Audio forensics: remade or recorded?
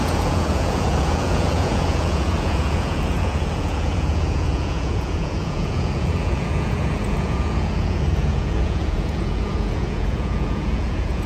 remade